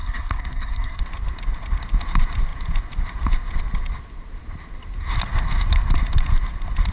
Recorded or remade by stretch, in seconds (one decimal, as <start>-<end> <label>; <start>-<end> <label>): 0.0-1.0 remade; 1.0-6.9 recorded